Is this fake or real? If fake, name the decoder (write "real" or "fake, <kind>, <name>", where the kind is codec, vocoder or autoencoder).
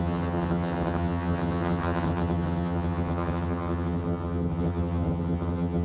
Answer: fake, vocoder, HiFi-GAN